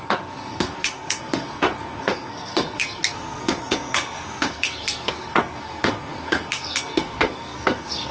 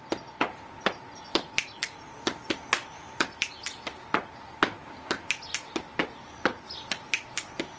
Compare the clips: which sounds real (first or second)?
second